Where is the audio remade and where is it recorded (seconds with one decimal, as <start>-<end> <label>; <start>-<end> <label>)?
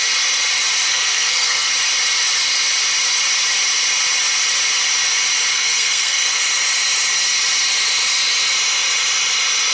0.0-0.9 recorded; 0.9-1.7 remade; 1.7-5.5 recorded; 5.5-6.4 remade; 6.4-9.7 recorded